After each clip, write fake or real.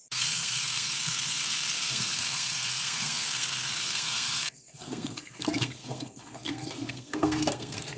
fake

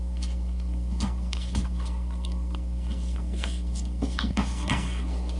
fake